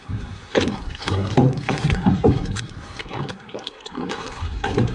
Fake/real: fake